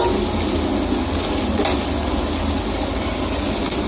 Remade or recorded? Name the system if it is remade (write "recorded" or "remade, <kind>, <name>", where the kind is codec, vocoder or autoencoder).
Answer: recorded